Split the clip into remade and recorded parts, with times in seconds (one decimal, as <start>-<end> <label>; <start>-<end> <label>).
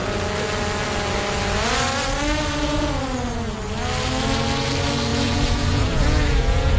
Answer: 0.0-5.1 recorded; 5.1-6.8 remade